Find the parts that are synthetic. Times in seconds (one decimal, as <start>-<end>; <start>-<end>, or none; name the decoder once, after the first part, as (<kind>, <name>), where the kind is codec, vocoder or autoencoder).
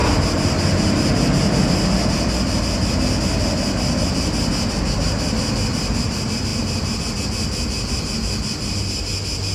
none